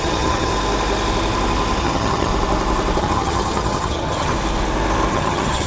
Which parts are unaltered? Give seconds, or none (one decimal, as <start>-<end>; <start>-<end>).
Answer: 0.5-1.8; 2.3-3.0; 4.3-5.1